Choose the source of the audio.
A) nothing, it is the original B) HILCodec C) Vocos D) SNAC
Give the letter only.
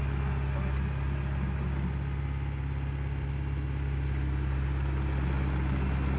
A